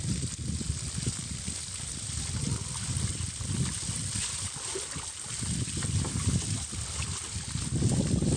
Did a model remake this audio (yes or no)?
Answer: no